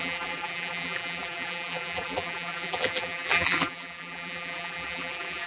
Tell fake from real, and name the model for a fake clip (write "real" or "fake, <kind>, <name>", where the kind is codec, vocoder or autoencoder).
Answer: fake, vocoder, BigVGAN v2